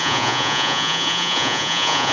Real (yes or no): no